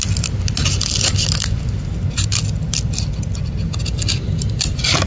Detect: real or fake real